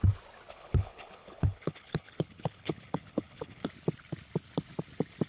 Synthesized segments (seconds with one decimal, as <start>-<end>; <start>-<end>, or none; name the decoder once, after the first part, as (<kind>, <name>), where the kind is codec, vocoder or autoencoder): 0.5-3.7 (codec, HILCodec)